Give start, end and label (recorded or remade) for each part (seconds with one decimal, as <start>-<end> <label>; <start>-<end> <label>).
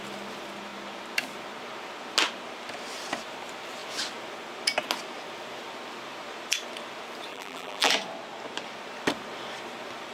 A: 0.0-7.3 recorded; 7.3-7.9 remade; 7.9-10.1 recorded